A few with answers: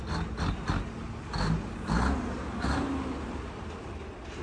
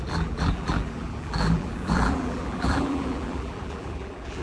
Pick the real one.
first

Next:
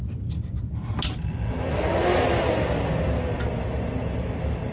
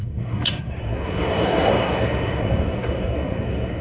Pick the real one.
first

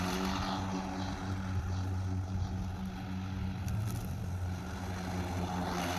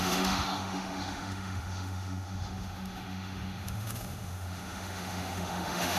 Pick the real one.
first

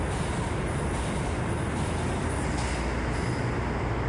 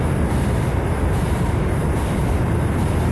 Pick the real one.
first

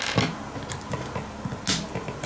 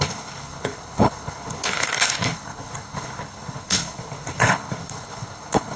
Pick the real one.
first